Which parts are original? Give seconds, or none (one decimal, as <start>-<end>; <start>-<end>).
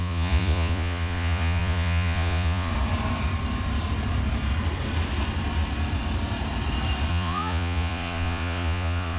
2.7-7.1